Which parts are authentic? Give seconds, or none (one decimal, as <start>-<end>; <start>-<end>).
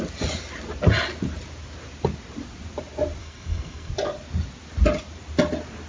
0.0-3.2; 3.9-5.9